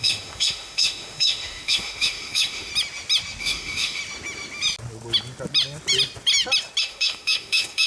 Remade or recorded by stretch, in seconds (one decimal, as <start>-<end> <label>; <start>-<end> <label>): 0.0-2.7 remade; 2.7-3.4 recorded; 3.4-4.0 remade; 4.0-6.8 recorded; 6.8-7.9 remade